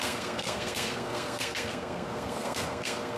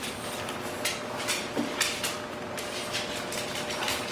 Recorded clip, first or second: second